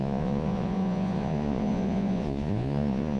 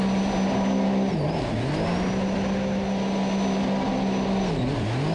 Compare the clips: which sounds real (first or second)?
second